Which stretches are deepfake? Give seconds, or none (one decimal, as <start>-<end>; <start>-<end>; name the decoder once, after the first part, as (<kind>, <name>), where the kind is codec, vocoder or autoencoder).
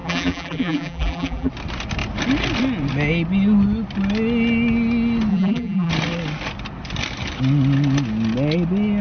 0.0-1.5 (vocoder, BigVGAN v2); 5.3-5.9